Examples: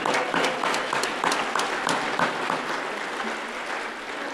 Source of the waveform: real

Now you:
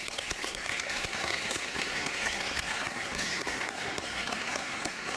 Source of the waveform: fake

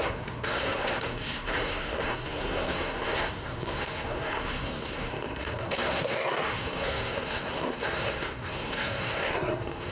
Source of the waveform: fake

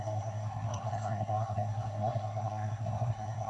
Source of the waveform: fake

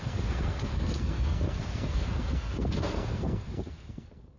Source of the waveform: fake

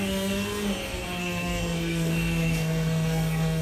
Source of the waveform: fake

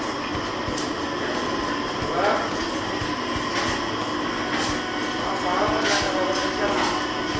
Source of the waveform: real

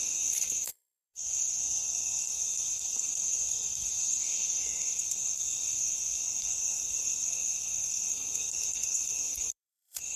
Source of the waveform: fake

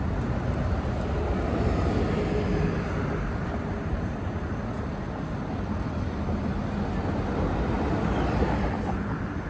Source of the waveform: real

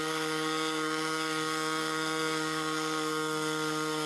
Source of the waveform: fake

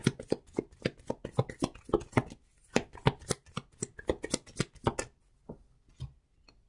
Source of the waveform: real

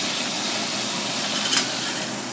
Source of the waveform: real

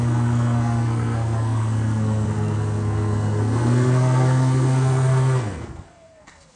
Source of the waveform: fake